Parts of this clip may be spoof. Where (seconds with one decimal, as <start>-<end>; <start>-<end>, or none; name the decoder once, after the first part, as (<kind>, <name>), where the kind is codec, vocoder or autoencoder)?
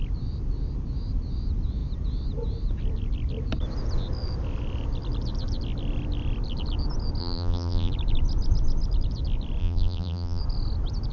7.2-7.9 (vocoder, BigVGAN v2); 9.6-10.4